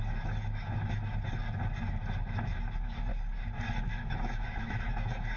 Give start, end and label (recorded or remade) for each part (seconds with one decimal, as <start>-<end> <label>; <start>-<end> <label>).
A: 0.0-1.0 remade; 1.0-1.9 recorded; 1.9-3.1 remade; 3.1-3.6 recorded; 3.6-5.4 remade